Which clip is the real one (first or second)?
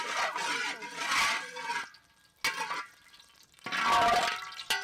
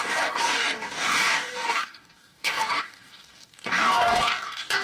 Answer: first